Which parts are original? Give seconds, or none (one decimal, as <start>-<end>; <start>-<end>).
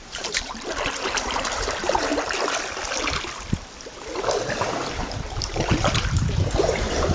2.1-4.9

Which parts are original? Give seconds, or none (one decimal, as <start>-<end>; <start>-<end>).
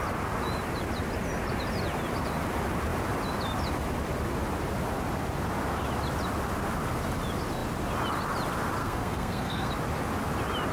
0.0-8.8; 9.7-10.7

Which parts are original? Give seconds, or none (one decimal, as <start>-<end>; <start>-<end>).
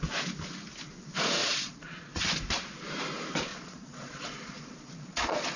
0.0-1.4; 2.2-3.5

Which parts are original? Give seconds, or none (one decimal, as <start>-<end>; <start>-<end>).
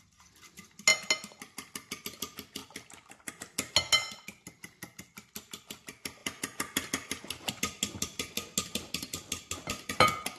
0.0-10.4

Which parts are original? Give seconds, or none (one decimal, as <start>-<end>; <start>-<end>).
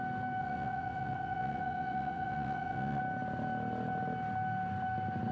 0.0-0.4; 3.0-5.3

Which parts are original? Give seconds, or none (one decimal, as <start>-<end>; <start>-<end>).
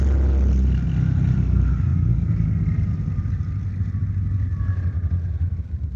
0.0-6.0